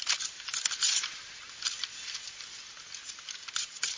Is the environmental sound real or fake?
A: real